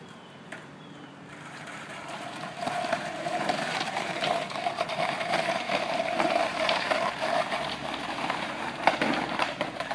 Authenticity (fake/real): fake